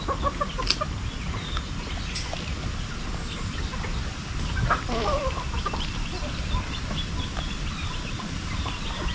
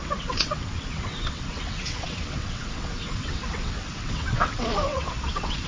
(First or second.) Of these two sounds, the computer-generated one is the second